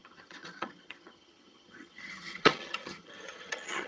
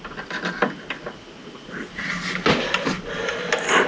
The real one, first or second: second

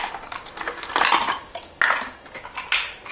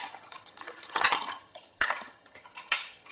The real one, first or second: first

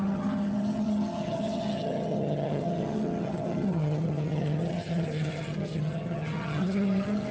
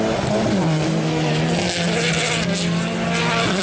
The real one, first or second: second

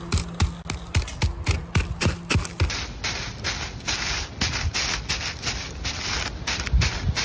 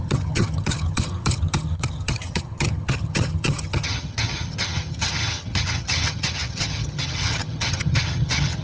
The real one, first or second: first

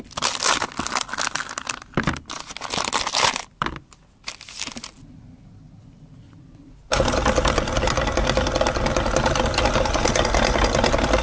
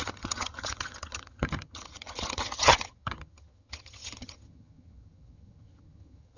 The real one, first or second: first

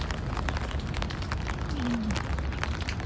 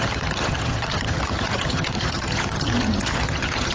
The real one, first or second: first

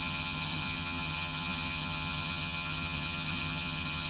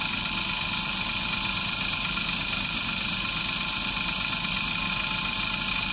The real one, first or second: second